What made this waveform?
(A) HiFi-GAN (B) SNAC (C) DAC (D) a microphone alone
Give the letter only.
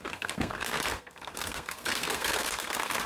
B